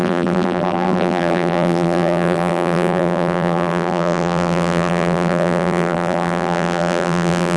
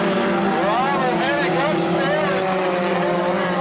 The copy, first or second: first